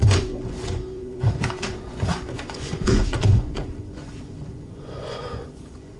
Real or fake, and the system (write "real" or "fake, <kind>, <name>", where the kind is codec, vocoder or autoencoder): fake, vocoder, Vocos